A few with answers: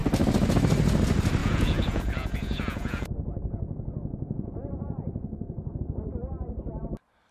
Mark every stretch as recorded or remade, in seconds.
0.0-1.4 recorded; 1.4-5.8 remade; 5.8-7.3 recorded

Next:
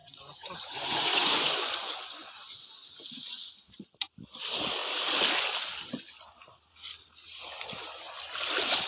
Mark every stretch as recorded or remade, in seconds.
0.0-2.9 remade; 2.9-8.9 recorded

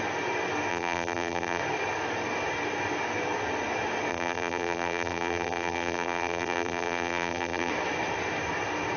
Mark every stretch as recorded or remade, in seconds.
0.0-0.7 recorded; 0.7-1.6 remade; 1.6-4.1 recorded; 4.1-7.7 remade; 7.7-9.0 recorded

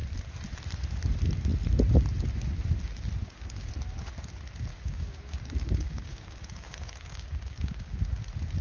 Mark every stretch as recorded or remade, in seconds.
0.0-3.2 recorded; 3.2-3.7 remade; 3.7-4.7 recorded; 4.7-8.2 remade; 8.2-8.6 recorded

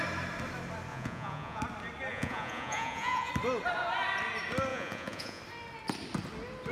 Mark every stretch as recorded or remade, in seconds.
0.0-0.9 recorded; 0.9-1.6 remade; 1.6-2.1 recorded; 2.1-3.3 remade; 3.3-4.7 recorded; 4.7-5.4 remade; 5.4-6.7 recorded

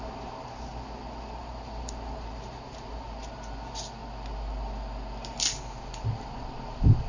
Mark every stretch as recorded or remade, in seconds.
0.0-0.7 remade; 0.7-1.4 recorded; 1.4-4.0 remade; 4.0-5.9 recorded; 5.9-7.1 remade